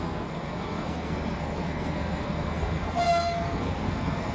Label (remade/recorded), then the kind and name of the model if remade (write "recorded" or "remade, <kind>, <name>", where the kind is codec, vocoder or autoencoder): remade, codec, SNAC